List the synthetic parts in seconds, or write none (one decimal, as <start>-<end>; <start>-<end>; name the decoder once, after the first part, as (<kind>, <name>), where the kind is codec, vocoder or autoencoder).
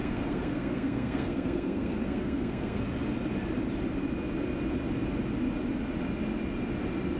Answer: 0.0-2.8 (codec, SNAC)